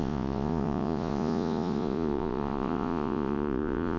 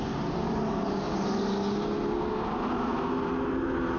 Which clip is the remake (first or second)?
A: first